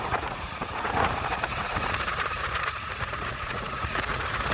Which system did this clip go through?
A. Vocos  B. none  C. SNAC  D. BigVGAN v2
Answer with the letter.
A